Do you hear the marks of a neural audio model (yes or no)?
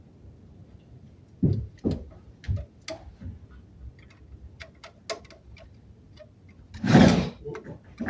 no